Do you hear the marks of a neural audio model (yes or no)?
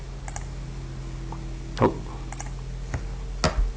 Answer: no